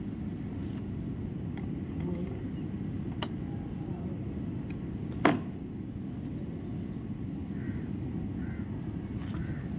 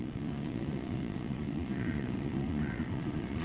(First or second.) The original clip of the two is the first